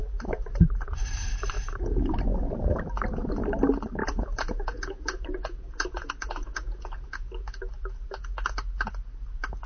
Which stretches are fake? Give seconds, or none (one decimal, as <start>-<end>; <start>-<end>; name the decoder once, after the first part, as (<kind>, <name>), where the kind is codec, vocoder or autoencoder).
4.0-7.3 (vocoder, Vocos)

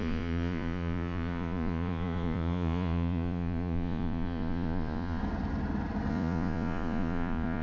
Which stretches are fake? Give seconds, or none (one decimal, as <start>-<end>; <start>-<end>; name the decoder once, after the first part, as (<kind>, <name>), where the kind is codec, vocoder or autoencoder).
0.0-5.2 (vocoder, Vocos); 6.1-7.6

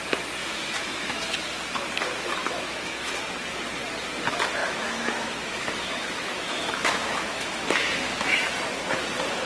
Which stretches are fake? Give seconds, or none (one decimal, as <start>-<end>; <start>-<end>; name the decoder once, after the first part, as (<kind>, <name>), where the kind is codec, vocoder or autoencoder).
0.4-1.2 (autoencoder, DAC-VAE); 2.4-3.1; 4.6-8.5

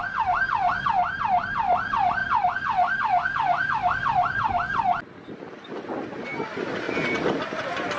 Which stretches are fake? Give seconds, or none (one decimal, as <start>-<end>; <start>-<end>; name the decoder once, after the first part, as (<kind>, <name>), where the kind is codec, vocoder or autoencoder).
none

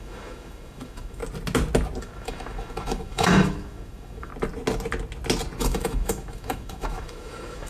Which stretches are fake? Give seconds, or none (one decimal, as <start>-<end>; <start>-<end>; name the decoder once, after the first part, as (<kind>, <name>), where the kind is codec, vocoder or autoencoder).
0.0-1.2 (autoencoder, DAC-VAE); 2.0-4.3; 5.6-7.7